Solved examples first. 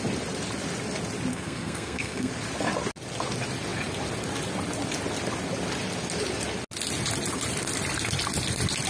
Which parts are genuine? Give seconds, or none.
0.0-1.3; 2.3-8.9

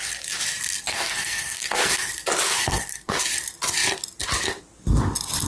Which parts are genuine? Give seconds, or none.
0.0-0.9; 2.1-2.5; 3.2-5.5

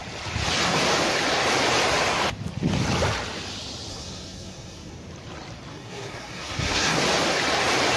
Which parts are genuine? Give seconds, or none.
0.0-3.9; 4.9-5.7; 7.0-8.0

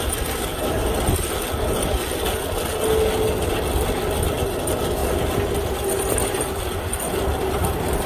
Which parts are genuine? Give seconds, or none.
0.0-8.1

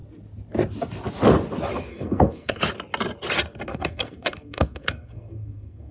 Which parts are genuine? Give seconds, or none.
0.0-1.9; 2.6-3.7

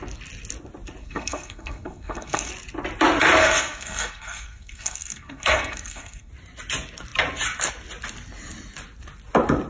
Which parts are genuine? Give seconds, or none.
0.0-1.0; 2.5-3.4; 6.3-9.7

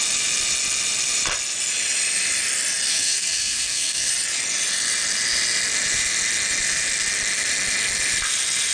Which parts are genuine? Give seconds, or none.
0.0-2.9; 4.1-8.7

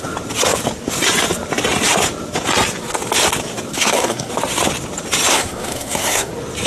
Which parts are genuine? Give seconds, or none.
0.0-3.7; 4.3-5.3; 6.3-6.7